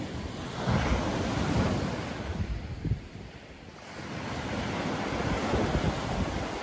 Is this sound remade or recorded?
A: recorded